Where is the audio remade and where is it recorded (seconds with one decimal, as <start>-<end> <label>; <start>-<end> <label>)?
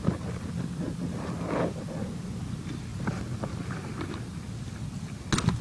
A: 0.0-5.6 recorded